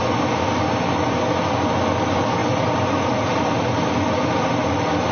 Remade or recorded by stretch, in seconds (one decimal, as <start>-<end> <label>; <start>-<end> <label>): 0.0-2.4 recorded; 2.4-3.8 remade; 3.8-5.1 recorded